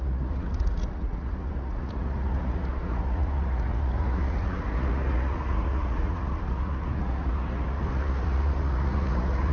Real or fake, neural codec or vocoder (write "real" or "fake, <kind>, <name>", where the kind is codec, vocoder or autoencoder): fake, vocoder, Vocos